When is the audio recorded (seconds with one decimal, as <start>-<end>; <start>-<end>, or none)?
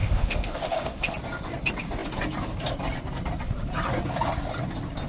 1.1-5.1